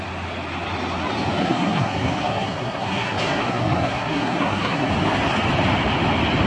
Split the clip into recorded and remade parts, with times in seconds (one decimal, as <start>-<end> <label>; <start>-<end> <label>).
0.0-1.4 recorded; 1.4-4.9 remade; 4.9-6.5 recorded

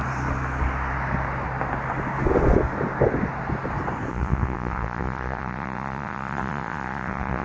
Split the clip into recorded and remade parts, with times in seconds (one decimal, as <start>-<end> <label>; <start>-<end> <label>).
0.0-4.1 recorded; 4.1-7.4 remade

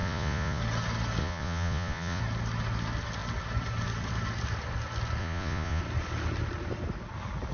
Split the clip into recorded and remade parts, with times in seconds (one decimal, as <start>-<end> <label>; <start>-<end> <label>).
0.0-0.6 remade; 0.6-1.2 recorded; 1.2-2.2 remade; 2.2-5.2 recorded; 5.2-5.8 remade; 5.8-7.5 recorded

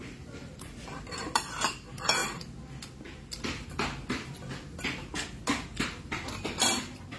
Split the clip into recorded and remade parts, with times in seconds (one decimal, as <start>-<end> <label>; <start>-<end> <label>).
0.0-2.2 remade; 2.2-5.8 recorded; 5.8-7.2 remade

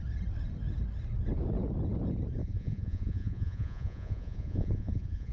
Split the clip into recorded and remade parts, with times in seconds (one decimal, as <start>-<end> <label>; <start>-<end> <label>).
0.0-2.4 recorded; 2.4-5.3 remade

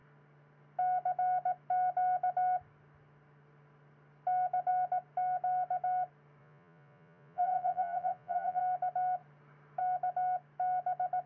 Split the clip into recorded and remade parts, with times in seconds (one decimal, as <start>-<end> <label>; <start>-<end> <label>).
0.0-6.4 recorded; 6.4-8.6 remade; 8.6-11.3 recorded